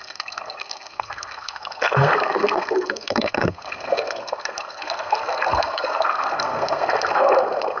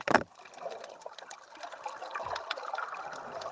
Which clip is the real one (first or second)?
second